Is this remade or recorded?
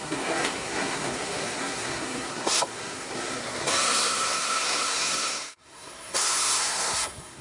remade